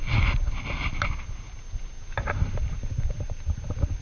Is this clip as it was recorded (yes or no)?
yes